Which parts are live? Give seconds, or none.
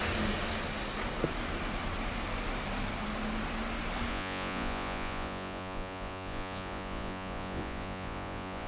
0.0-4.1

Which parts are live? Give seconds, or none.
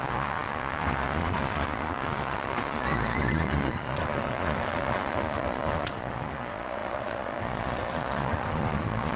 none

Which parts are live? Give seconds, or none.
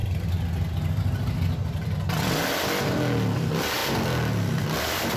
0.0-5.2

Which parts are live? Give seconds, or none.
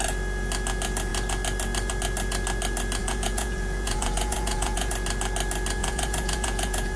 0.0-3.0; 4.9-5.8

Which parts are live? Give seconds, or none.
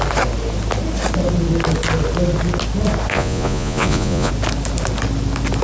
0.0-3.1; 4.3-5.6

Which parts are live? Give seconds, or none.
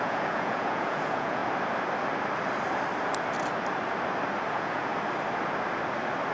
1.4-4.5; 4.9-6.3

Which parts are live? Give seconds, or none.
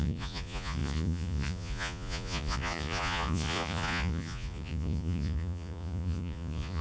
none